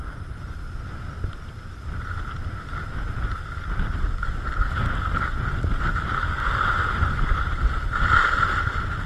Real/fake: real